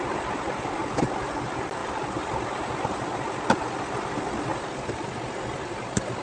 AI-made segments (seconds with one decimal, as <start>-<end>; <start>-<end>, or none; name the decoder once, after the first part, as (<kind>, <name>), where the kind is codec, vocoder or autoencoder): 1.8-3.8 (vocoder, BigVGAN v2)